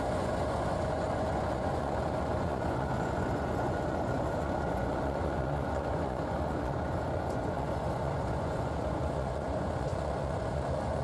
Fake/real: fake